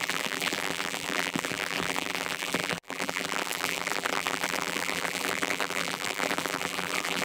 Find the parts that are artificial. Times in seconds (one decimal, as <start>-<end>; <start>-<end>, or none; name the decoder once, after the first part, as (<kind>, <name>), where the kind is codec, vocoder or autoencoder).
0.0-7.2 (vocoder, BigVGAN v2)